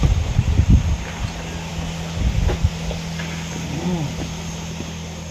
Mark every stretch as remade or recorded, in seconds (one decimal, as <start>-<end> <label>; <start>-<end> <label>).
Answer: 0.0-5.3 recorded